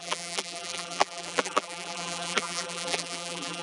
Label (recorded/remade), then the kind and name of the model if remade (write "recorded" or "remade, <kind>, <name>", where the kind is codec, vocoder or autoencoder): remade, vocoder, BigVGAN v2